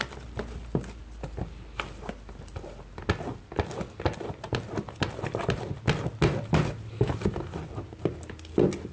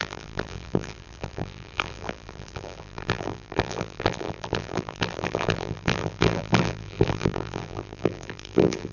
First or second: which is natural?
first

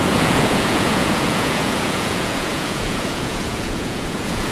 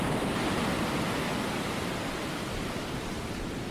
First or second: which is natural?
second